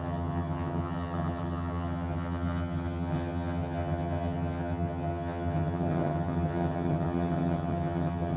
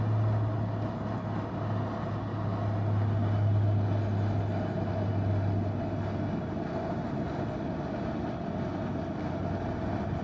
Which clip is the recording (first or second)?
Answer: second